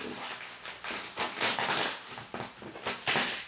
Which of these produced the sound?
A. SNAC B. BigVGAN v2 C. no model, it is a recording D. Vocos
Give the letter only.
C